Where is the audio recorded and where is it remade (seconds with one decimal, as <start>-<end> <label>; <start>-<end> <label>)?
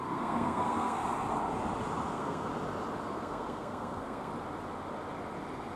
0.0-1.0 remade; 1.0-2.1 recorded; 2.1-2.5 remade; 2.5-3.0 recorded; 3.0-4.3 remade; 4.3-5.8 recorded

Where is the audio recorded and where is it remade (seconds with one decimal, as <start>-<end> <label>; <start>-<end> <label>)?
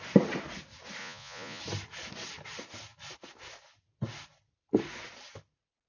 0.0-1.0 recorded; 1.0-1.6 remade; 1.6-5.9 recorded